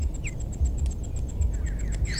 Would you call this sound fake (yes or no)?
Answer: no